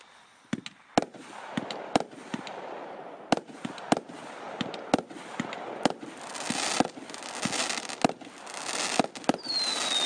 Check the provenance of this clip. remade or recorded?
recorded